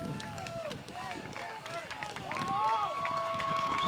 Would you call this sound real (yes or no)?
no